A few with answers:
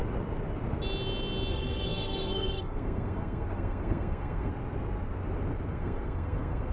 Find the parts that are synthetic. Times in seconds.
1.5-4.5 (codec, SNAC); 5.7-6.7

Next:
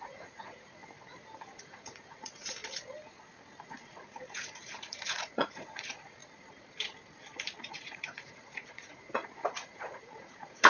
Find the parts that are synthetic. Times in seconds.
0.0-0.8 (vocoder, Vocos); 1.6-2.6; 3.6-6.2; 7.7-10.7